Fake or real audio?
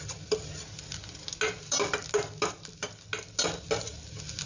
real